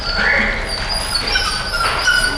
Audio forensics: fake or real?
real